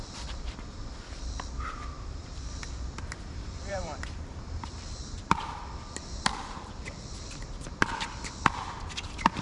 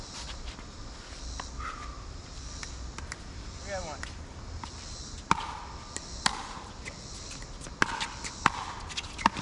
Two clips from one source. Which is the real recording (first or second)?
second